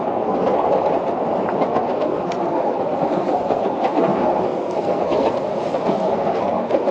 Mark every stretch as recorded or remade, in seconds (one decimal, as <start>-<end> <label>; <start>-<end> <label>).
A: 0.0-0.7 remade; 0.7-1.6 recorded; 1.6-6.9 remade